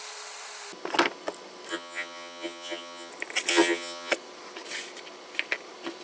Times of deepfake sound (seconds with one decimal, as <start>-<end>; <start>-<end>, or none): 1.7-3.1; 3.5-4.1